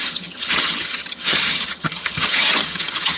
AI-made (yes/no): yes